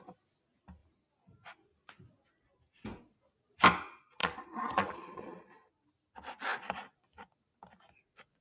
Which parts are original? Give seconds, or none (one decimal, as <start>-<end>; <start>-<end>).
0.0-4.2; 5.4-8.4